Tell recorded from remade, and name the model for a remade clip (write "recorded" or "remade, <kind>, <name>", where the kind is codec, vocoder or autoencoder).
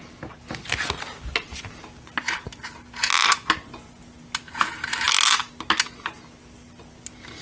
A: recorded